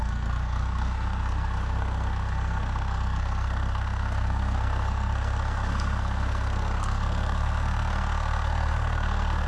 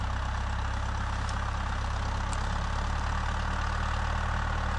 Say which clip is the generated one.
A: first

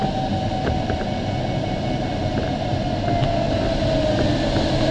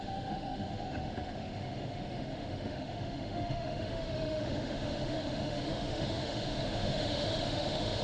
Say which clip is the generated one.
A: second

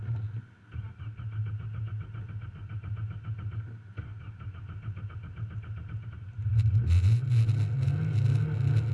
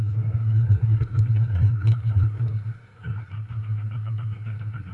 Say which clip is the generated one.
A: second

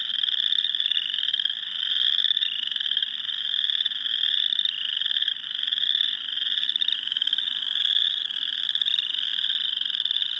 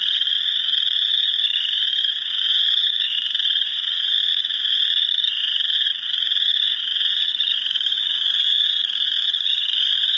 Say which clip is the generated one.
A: second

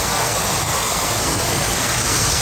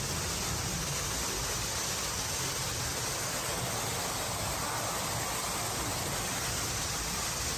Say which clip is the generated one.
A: first